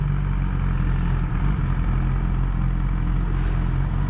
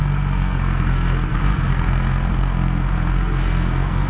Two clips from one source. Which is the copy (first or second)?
second